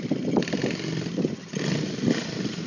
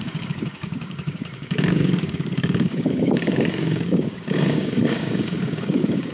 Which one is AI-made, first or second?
second